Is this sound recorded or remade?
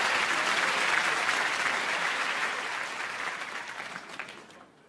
recorded